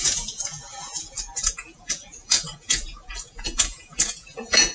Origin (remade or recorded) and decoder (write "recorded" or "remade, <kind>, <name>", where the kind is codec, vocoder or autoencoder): remade, vocoder, Vocos